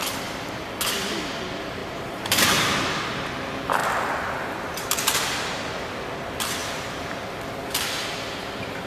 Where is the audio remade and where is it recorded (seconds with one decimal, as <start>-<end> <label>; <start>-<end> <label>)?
0.0-6.6 recorded; 6.6-7.2 remade; 7.2-8.9 recorded